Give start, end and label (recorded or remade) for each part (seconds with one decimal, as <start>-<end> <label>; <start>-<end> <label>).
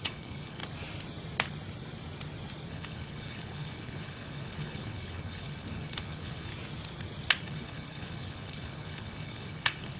0.0-0.6 remade; 0.6-2.7 recorded; 2.7-6.5 remade; 6.5-7.4 recorded; 7.4-10.0 remade